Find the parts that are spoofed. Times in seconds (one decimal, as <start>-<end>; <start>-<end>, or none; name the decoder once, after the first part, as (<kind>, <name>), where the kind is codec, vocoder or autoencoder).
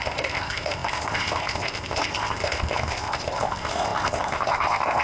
0.0-5.0 (codec, ZipCodec)